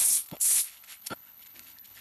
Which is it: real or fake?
fake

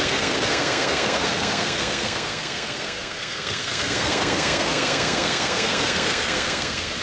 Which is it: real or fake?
fake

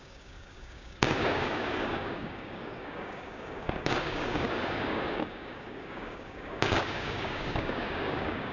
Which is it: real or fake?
fake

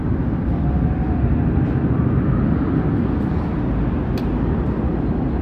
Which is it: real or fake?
real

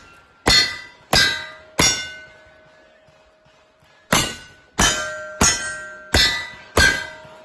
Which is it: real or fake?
real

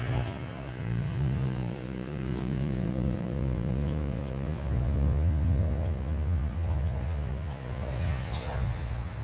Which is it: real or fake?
fake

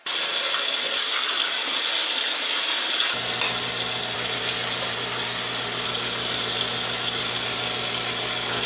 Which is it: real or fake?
real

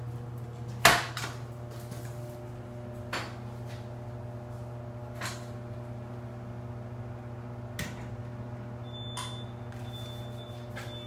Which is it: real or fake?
real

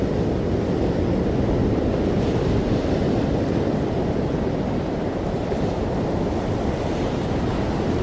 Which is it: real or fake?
real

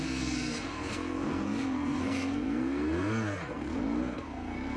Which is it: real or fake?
fake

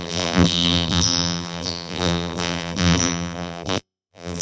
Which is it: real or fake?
fake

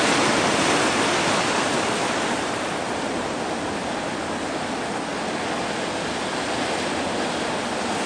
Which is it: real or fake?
real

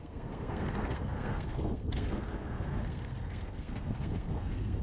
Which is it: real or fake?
fake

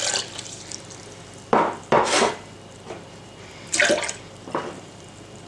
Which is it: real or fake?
fake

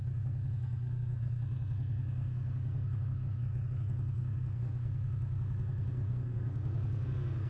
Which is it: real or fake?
fake